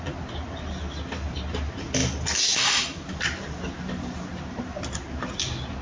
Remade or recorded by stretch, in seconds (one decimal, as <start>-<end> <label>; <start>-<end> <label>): 0.0-2.0 recorded; 2.0-3.6 remade; 3.6-4.3 recorded; 4.3-5.3 remade; 5.3-5.8 recorded